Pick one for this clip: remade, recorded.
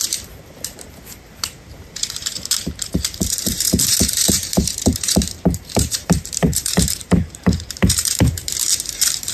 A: remade